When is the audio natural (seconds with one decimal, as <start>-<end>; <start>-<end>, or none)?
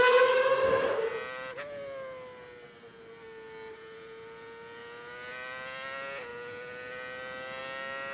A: 0.0-8.1